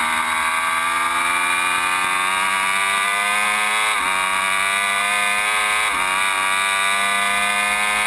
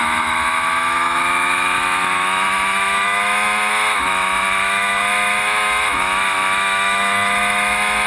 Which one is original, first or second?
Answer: first